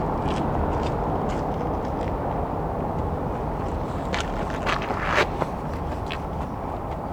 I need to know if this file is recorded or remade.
recorded